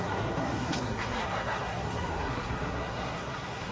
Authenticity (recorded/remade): remade